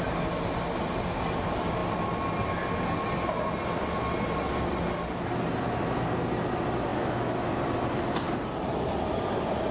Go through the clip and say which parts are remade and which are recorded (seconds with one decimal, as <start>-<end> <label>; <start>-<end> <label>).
0.0-9.7 recorded